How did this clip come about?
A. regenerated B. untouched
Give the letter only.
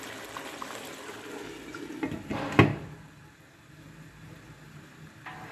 B